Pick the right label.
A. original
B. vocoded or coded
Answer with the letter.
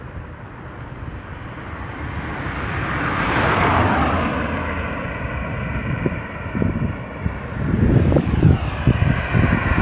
A